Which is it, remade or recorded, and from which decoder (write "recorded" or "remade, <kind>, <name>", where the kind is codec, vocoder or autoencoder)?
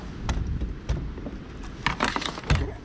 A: recorded